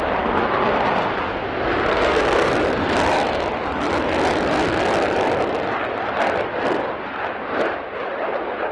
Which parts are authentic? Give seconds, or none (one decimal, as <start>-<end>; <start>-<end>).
0.0-1.9; 2.5-8.7